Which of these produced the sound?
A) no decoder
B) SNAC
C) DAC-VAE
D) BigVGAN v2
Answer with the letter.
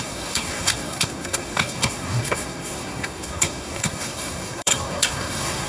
B